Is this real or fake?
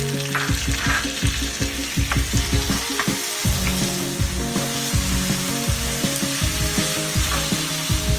real